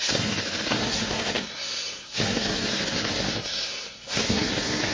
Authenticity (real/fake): fake